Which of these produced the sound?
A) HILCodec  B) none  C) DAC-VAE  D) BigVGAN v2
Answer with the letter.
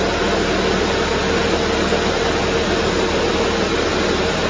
B